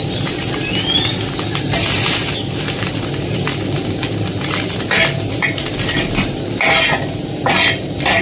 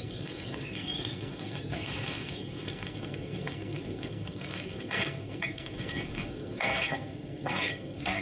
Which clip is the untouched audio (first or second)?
first